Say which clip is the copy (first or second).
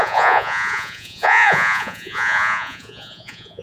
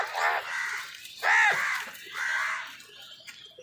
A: first